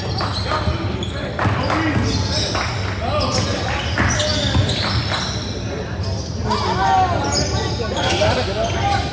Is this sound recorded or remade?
recorded